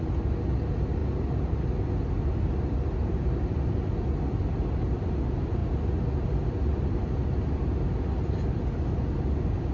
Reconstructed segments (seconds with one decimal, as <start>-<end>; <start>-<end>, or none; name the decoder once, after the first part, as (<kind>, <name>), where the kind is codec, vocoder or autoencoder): none